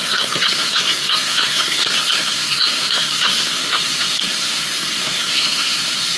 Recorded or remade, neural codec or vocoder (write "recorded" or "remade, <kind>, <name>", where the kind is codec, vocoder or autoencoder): remade, codec, SNAC